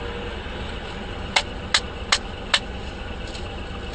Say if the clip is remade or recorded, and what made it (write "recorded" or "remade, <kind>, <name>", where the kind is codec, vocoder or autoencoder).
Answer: recorded